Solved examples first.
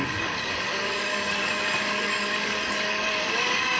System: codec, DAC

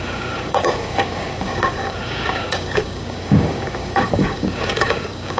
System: codec, DAC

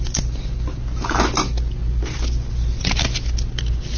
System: none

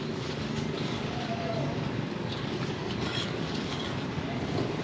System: codec, DAC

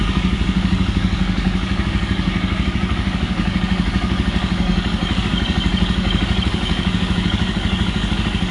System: codec, DAC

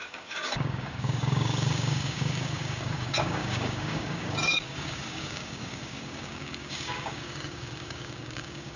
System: codec, DAC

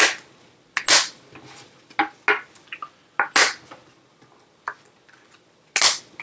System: none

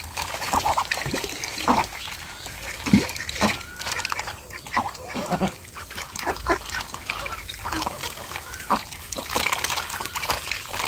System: codec, DAC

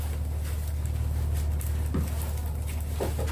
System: none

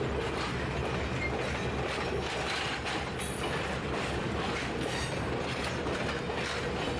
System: none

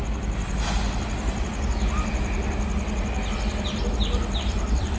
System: none